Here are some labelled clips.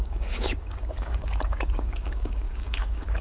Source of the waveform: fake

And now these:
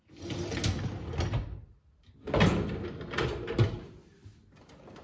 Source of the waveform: real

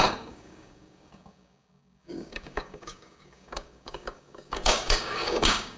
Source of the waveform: fake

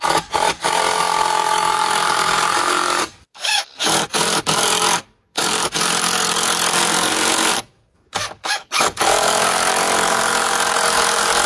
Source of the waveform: fake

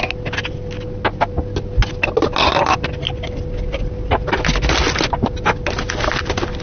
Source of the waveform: real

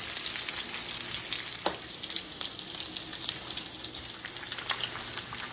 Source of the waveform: real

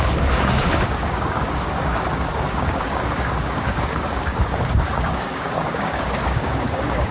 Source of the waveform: fake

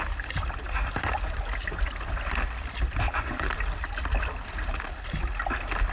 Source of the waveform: real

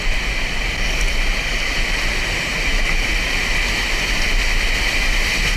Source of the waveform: real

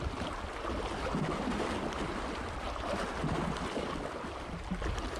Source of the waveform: real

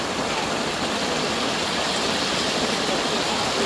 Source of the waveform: real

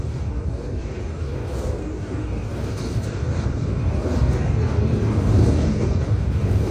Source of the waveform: fake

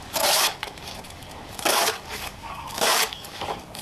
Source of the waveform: fake